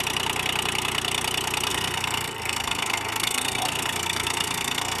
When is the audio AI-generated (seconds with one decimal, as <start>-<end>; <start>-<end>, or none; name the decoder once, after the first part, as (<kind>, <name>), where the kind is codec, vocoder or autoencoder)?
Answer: 1.7-5.0 (codec, SNAC)